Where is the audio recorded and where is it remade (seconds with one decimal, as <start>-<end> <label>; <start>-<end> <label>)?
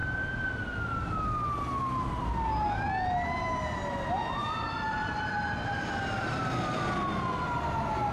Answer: 0.0-4.4 recorded; 4.4-6.9 remade; 6.9-8.1 recorded